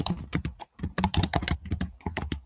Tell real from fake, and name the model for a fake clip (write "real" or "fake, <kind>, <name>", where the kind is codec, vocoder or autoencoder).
fake, vocoder, Vocos